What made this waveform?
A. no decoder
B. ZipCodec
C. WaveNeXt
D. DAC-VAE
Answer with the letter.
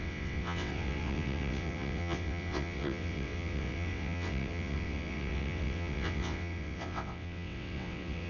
C